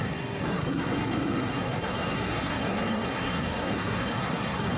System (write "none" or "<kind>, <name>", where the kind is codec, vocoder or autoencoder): codec, SNAC